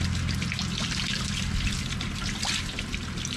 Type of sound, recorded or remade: recorded